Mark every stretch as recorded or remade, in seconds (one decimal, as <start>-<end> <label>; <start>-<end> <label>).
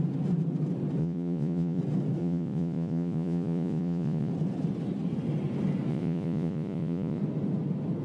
0.0-1.0 recorded; 1.0-1.8 remade; 1.8-2.2 recorded; 2.2-4.3 remade; 4.3-5.9 recorded; 5.9-7.2 remade; 7.2-8.0 recorded